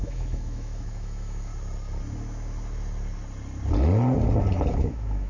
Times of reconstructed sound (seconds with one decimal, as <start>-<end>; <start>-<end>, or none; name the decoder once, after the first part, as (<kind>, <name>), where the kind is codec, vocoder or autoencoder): 0.0-1.5 (autoencoder, DAC-VAE); 4.7-5.3